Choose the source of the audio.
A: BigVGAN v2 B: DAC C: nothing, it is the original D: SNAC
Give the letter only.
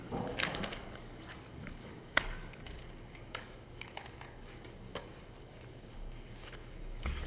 B